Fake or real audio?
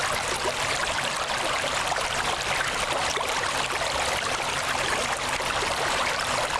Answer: real